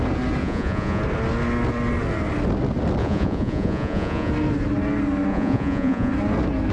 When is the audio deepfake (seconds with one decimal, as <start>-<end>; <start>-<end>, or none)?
0.4-1.0; 3.0-4.3; 5.3-6.1